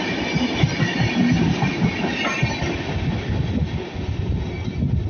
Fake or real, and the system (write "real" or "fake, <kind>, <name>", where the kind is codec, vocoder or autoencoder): real